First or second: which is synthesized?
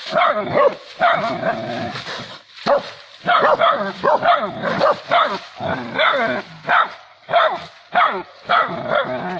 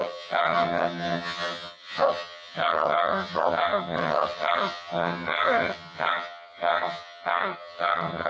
second